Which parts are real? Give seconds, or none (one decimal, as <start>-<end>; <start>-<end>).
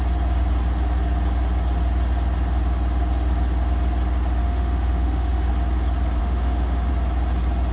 0.0-4.4; 5.5-6.2; 6.9-7.7